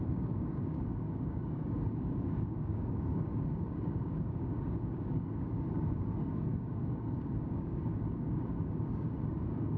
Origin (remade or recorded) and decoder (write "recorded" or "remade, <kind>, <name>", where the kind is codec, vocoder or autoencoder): remade, codec, DAC